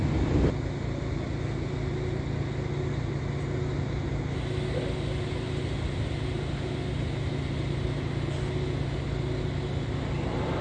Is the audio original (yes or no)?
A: yes